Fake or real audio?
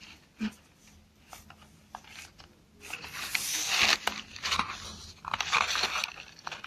real